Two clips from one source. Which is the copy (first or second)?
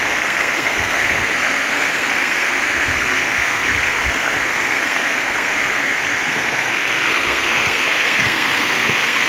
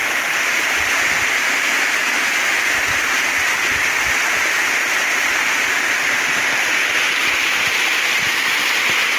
first